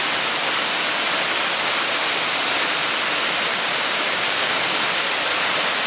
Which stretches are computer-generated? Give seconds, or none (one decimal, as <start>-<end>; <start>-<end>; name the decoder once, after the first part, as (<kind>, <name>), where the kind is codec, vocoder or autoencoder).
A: 3.5-4.7 (codec, DAC)